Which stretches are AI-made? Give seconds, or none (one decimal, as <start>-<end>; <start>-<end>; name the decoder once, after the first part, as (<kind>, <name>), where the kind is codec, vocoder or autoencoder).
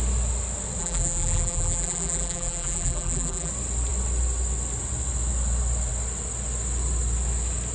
0.8-3.5 (vocoder, BigVGAN v2)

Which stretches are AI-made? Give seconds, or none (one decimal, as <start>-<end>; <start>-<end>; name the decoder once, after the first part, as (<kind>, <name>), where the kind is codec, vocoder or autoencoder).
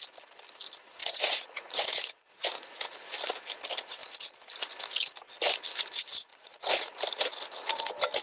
1.0-3.1 (vocoder, Vocos); 4.0-4.7; 6.3-6.9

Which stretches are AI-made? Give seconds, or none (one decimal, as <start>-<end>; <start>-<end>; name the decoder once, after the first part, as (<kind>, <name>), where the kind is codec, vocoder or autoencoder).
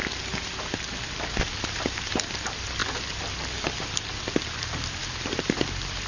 none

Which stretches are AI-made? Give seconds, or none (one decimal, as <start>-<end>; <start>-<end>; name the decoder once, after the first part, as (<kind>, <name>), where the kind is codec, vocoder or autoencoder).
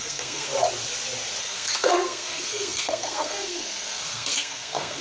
0.0-0.5 (codec, SNAC); 1.4-5.0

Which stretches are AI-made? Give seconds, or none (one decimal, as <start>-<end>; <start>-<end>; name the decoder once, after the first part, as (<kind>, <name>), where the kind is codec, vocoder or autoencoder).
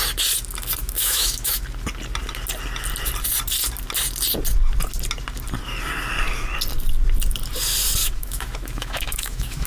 0.8-1.6 (autoencoder, DAC-VAE); 8.0-9.7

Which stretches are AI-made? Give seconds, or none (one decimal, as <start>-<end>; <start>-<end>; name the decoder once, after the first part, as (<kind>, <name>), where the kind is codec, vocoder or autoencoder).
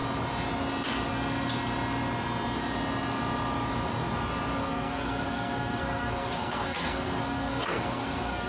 4.6-8.5 (codec, SNAC)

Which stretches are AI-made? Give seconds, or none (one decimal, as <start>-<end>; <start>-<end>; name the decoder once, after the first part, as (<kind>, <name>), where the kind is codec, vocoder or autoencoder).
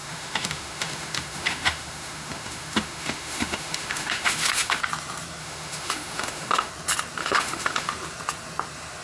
0.0-4.8 (autoencoder, DAC-VAE); 5.4-6.7; 7.2-7.9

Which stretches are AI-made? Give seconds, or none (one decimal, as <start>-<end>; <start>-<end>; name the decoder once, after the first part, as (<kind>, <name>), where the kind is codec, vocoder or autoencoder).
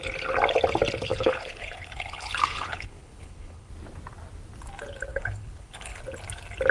1.1-3.7 (codec, HILCodec); 5.1-6.0